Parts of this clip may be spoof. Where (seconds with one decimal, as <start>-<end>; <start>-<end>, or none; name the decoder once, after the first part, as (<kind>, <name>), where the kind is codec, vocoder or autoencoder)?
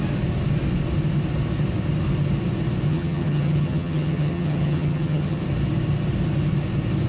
2.9-5.4 (vocoder, HiFi-GAN)